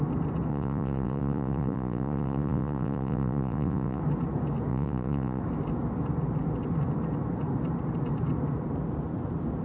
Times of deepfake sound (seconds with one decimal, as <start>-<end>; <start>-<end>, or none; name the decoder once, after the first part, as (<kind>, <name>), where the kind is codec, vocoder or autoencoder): 0.5-4.0 (vocoder, Vocos); 4.7-5.4